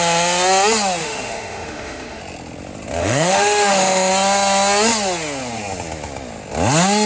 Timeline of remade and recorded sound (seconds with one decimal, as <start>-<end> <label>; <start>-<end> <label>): 0.0-1.0 recorded; 1.0-2.2 remade; 2.2-3.0 recorded; 3.0-4.1 remade; 4.1-7.1 recorded

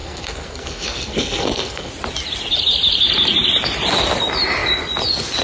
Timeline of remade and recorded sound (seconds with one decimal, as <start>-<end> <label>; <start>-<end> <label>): 0.0-1.9 remade; 1.9-5.4 recorded

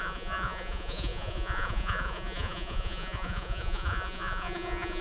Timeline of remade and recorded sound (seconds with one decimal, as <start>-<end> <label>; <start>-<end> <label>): 0.0-5.0 remade

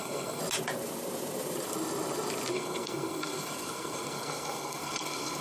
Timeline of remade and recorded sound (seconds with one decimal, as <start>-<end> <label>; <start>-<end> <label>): 0.0-0.4 remade; 0.4-2.5 recorded; 2.5-5.4 remade

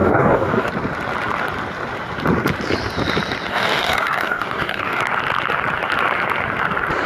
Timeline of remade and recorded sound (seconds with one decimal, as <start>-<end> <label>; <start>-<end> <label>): 0.0-0.7 remade; 0.7-3.5 recorded; 3.5-5.0 remade; 5.0-7.1 recorded

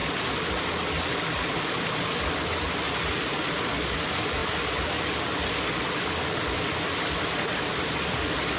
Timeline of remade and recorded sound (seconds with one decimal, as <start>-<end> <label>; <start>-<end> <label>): 0.0-8.6 recorded

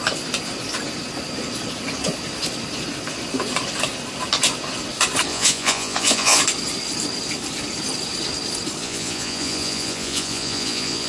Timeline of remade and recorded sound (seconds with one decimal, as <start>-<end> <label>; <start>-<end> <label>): 0.0-5.3 recorded; 5.3-6.4 remade; 6.4-8.8 recorded; 8.8-11.1 remade

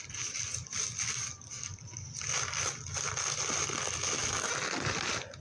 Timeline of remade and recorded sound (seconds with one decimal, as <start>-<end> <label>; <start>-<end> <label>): 0.0-5.4 recorded